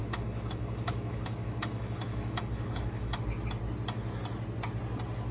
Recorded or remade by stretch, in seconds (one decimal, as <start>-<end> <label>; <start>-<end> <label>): 0.0-3.2 remade; 3.2-5.3 recorded